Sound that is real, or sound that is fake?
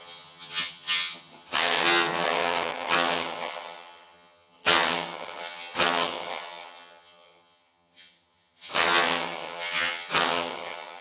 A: fake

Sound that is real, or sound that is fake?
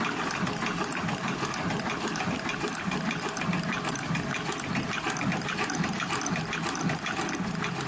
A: real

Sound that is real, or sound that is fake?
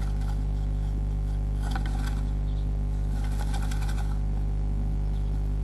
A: real